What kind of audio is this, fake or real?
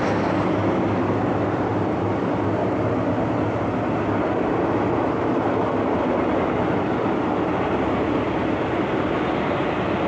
real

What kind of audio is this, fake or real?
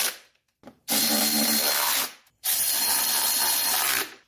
fake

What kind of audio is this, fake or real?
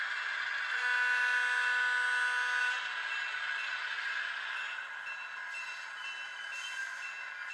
real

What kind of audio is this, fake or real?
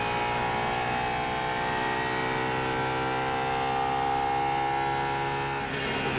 real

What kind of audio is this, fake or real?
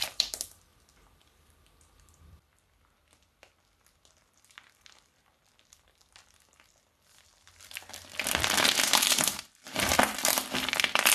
fake